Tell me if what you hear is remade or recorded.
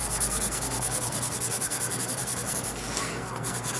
remade